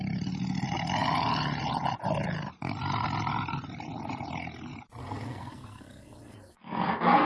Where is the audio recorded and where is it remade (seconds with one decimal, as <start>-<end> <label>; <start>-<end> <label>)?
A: 0.0-5.0 recorded; 5.0-7.3 remade